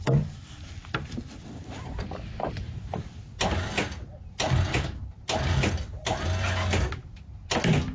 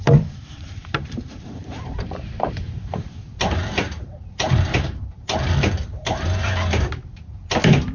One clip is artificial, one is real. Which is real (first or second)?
first